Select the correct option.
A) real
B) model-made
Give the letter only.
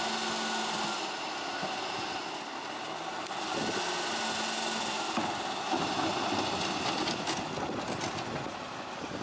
A